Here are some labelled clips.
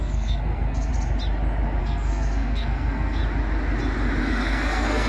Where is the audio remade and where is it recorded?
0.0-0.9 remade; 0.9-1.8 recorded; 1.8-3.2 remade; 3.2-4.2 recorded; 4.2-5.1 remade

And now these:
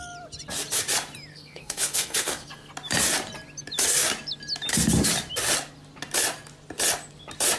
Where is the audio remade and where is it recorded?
0.0-1.3 recorded; 1.3-2.7 remade; 2.7-7.6 recorded

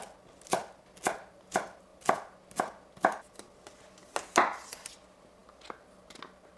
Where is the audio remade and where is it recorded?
0.0-6.6 recorded

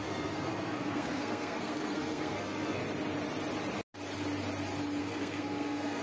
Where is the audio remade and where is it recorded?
0.0-2.8 remade; 2.8-5.0 recorded; 5.0-6.0 remade

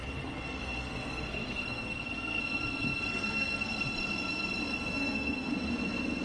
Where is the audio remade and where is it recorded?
0.0-2.4 remade; 2.4-3.1 recorded; 3.1-3.7 remade; 3.7-4.9 recorded; 4.9-5.5 remade; 5.5-6.2 recorded

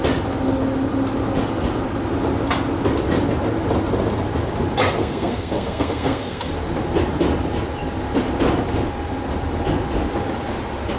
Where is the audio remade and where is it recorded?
0.0-5.0 recorded; 5.0-6.5 remade; 6.5-11.0 recorded